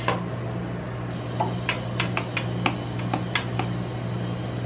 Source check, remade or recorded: recorded